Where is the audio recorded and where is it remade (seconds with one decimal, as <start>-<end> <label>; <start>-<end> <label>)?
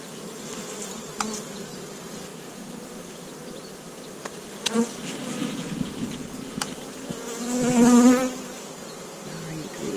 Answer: 0.0-2.3 recorded; 2.3-2.8 remade; 2.8-5.4 recorded; 5.4-6.6 remade; 6.6-10.0 recorded